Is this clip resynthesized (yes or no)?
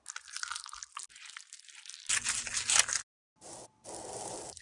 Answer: no